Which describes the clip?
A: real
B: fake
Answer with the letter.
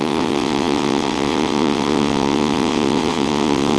B